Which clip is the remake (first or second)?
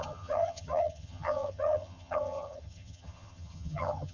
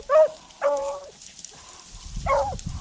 first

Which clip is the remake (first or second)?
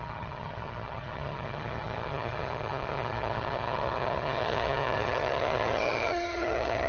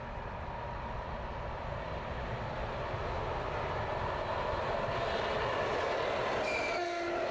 first